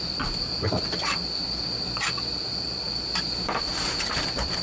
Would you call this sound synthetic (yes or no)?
yes